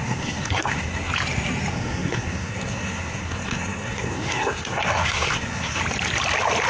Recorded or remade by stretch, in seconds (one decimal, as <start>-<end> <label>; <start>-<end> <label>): 0.0-1.1 remade; 1.1-1.7 recorded; 1.7-5.8 remade; 5.8-6.7 recorded